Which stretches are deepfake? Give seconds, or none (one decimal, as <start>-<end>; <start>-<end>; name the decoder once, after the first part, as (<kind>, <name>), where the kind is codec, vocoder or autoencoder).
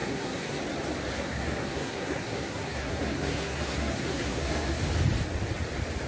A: 0.0-0.6 (codec, SNAC); 1.1-4.8